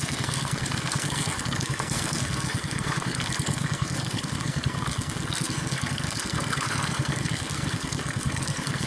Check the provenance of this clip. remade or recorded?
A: remade